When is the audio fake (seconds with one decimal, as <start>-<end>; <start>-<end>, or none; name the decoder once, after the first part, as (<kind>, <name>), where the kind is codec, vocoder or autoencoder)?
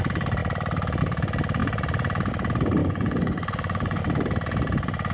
2.8-4.0 (vocoder, Vocos)